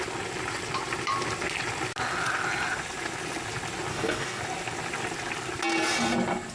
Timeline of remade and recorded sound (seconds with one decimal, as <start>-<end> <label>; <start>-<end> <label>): 0.0-3.9 recorded; 3.9-4.4 remade; 4.4-6.5 recorded